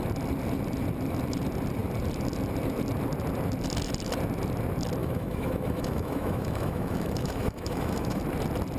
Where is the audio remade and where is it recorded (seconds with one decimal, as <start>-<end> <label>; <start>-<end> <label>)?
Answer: 0.0-5.0 recorded; 5.0-8.2 remade; 8.2-8.8 recorded